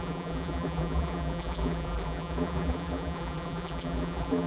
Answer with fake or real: fake